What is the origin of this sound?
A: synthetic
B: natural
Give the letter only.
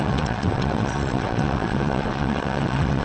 A